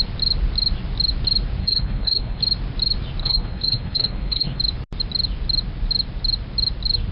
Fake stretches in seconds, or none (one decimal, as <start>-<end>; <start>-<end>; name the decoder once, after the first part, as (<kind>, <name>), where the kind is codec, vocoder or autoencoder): 1.6-2.4 (codec, HILCodec); 3.2-4.6